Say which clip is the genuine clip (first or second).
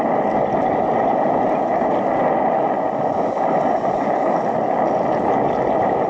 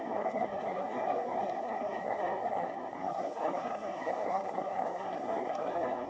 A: first